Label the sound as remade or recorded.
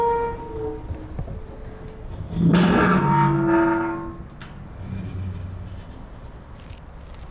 recorded